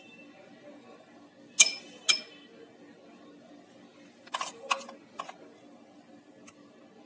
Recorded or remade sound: recorded